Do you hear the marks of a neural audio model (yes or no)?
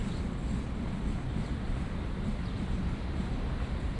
no